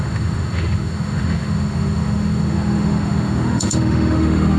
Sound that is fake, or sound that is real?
fake